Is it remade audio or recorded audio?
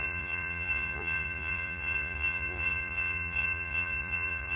remade